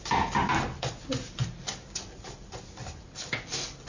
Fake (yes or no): no